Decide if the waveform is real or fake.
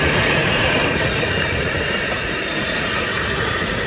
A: fake